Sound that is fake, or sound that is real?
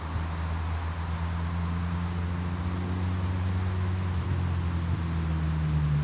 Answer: real